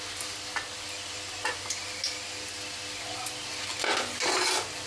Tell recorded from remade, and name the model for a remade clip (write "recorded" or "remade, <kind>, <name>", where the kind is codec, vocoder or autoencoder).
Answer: recorded